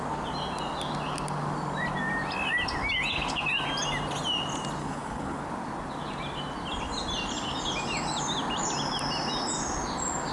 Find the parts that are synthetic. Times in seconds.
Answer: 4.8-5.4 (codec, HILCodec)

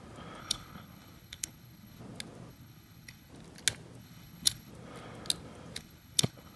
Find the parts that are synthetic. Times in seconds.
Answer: 0.4-2.0 (codec, HILCodec); 2.5-3.3; 4.0-4.7; 5.8-6.6

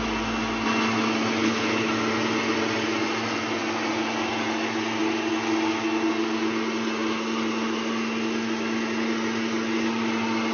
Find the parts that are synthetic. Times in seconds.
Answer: 1.4-1.9 (codec, HILCodec)